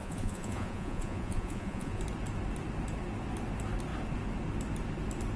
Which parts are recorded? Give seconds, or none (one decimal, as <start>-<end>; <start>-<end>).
2.0-5.4